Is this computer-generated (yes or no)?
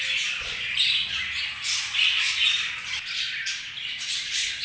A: no